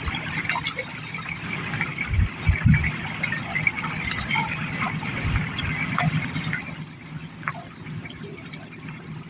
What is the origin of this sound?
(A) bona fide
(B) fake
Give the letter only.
A